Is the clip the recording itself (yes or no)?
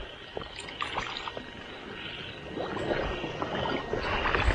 yes